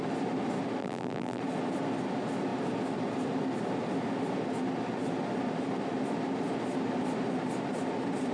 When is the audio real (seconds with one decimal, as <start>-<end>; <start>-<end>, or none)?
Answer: 0.0-0.8; 1.4-8.3